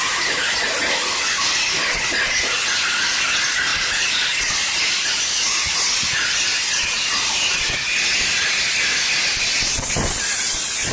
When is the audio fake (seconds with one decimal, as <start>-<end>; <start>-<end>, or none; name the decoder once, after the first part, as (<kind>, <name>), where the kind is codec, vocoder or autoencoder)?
none